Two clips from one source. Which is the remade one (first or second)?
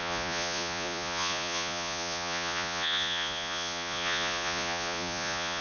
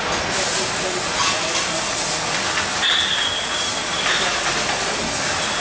first